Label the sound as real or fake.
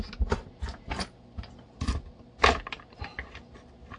real